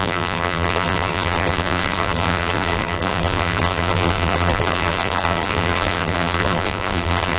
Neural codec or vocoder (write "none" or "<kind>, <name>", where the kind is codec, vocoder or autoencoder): vocoder, BigVGAN v2